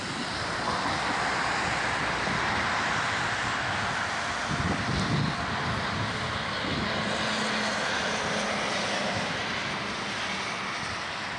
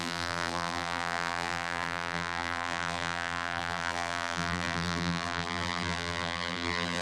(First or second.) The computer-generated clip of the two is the second